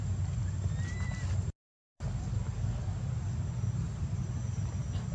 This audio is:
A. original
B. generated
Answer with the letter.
A